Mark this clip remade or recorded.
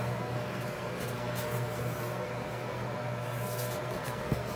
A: remade